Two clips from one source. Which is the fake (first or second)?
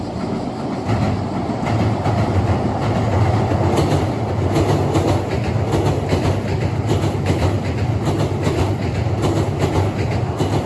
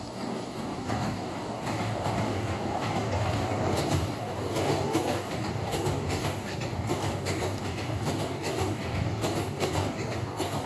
second